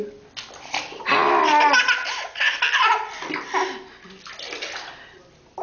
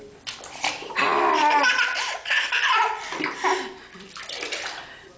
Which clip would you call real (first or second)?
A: first